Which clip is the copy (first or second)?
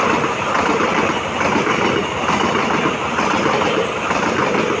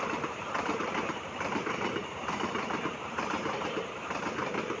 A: second